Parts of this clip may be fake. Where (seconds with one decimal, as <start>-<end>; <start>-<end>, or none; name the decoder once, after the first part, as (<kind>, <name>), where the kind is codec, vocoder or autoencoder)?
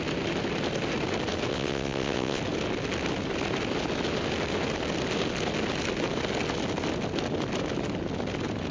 1.5-2.4 (vocoder, WaveNeXt)